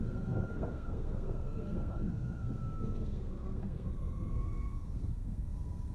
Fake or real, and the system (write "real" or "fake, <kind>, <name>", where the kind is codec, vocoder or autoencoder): fake, codec, SNAC